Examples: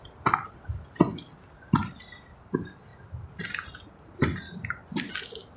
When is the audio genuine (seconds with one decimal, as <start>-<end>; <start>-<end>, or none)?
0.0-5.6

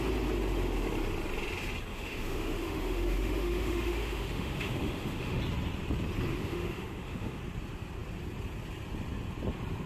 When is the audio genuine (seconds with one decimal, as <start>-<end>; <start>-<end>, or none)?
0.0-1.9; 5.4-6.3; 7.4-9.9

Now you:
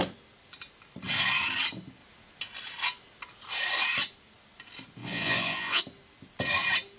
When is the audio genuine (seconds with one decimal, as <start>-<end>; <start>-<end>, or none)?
0.0-5.0; 5.8-7.0

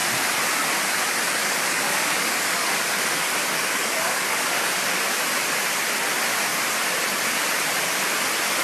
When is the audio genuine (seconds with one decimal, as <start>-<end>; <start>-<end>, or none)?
0.0-1.4; 4.7-8.6

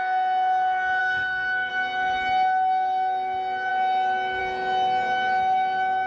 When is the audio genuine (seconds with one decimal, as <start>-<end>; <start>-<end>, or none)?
0.0-1.0; 1.7-6.1